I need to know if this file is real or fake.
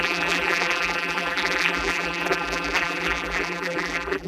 fake